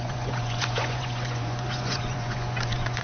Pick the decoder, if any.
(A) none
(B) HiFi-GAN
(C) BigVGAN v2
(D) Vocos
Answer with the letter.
D